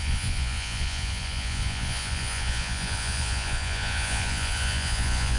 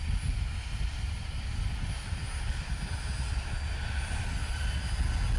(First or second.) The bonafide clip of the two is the second